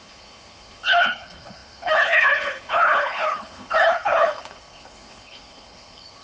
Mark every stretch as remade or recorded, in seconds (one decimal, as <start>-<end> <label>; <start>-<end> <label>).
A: 0.0-6.2 remade